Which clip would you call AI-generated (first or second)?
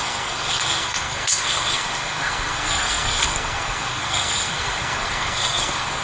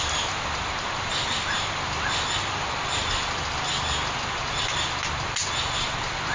first